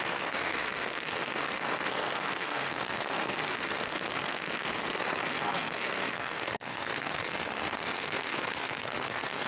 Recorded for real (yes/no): no